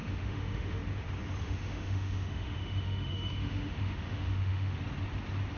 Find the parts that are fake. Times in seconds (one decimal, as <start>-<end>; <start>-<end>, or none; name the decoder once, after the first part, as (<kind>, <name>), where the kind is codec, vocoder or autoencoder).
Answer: 0.0-0.8 (autoencoder, DAC-VAE); 1.4-4.8